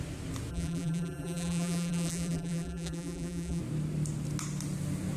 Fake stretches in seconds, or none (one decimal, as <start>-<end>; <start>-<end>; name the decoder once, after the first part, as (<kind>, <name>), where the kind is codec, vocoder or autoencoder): 0.5-3.6 (vocoder, BigVGAN v2)